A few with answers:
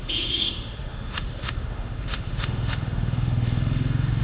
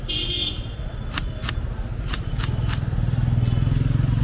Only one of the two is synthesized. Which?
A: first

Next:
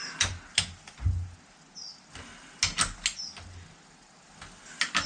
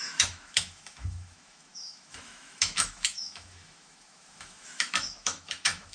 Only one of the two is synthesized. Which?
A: second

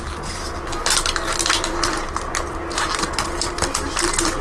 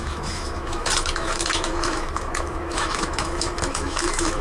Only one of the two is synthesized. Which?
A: second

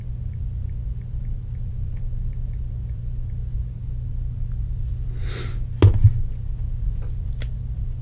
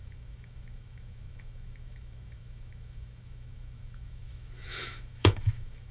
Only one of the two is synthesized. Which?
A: second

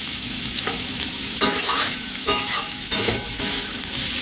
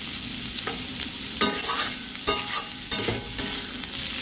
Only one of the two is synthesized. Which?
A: first